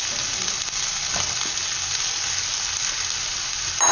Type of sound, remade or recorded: recorded